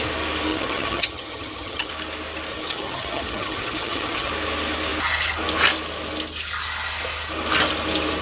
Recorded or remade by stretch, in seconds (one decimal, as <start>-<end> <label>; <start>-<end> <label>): 0.0-0.5 recorded; 0.5-1.9 remade; 1.9-2.5 recorded; 2.5-4.3 remade; 4.3-8.2 recorded